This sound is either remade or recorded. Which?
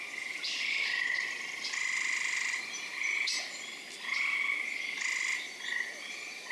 recorded